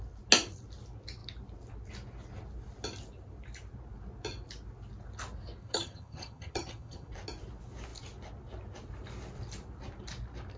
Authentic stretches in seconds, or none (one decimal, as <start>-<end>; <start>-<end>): 0.0-5.6; 7.1-10.6